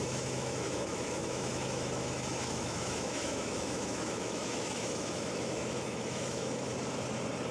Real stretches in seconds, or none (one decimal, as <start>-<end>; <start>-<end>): 6.7-7.5